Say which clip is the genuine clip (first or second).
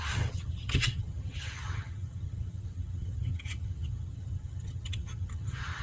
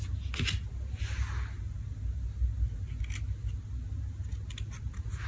second